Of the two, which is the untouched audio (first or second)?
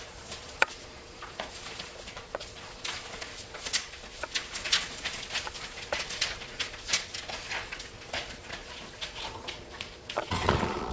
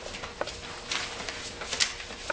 second